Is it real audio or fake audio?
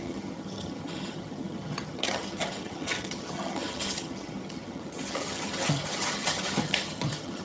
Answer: fake